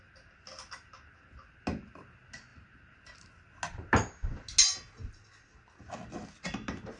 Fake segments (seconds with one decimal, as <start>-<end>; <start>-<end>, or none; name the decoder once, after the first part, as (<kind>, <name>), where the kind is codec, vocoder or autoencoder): none